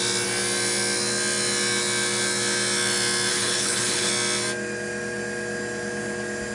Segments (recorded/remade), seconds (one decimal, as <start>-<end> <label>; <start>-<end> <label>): 0.0-3.3 recorded; 3.3-4.1 remade; 4.1-6.5 recorded